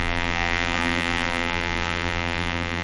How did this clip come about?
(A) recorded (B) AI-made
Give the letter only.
B